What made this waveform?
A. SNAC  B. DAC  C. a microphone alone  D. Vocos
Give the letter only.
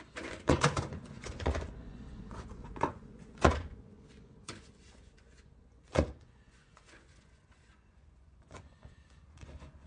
D